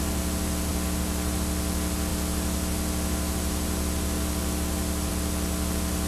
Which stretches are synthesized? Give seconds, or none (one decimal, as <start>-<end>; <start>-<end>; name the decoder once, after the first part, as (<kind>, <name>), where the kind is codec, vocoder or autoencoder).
0.7-1.3 (vocoder, BigVGAN v2)